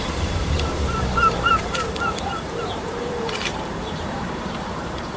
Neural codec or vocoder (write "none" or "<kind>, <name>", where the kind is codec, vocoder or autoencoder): vocoder, BigVGAN v2